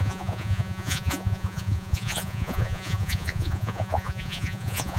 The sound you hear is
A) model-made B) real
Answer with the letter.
A